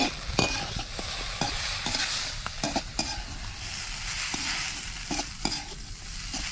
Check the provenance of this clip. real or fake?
real